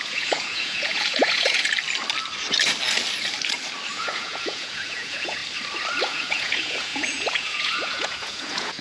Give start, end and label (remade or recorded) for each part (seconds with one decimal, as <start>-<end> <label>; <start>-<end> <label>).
0.0-1.7 remade; 1.7-3.9 recorded; 3.9-5.4 remade; 5.4-6.0 recorded; 6.0-8.8 remade